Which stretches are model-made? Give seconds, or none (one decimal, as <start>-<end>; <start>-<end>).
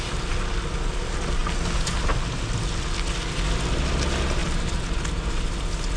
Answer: none